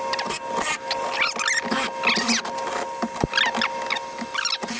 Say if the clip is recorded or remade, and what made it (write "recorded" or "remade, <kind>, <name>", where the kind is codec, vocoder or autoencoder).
recorded